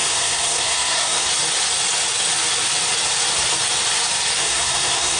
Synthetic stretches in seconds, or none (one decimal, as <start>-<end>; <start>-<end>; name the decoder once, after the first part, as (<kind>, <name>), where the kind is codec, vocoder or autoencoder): 0.0-1.3 (codec, SNAC); 4.4-5.2